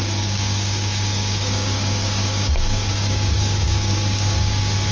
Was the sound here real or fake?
fake